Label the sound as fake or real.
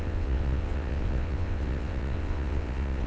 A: fake